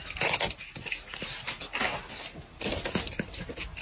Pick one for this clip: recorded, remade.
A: recorded